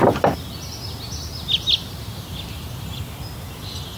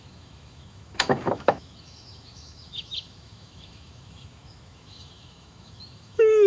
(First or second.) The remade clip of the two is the second